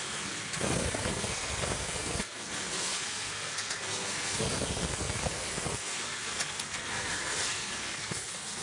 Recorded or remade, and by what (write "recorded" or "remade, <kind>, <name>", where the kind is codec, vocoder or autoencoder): remade, codec, SNAC